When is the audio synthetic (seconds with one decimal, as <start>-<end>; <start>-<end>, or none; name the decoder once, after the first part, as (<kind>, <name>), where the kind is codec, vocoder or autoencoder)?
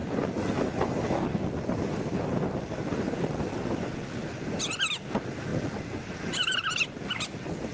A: none